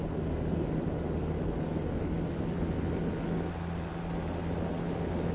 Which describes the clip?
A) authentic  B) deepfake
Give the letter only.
A